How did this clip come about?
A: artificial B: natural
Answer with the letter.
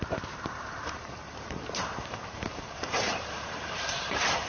A